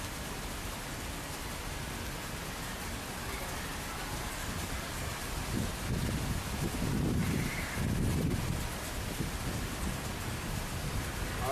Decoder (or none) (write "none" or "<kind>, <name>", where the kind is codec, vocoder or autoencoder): none